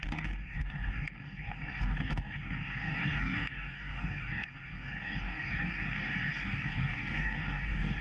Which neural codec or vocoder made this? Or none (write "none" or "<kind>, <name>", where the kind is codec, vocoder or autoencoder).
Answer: codec, DAC